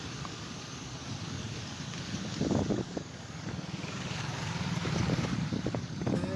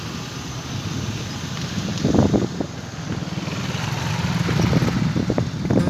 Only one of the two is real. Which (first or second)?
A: second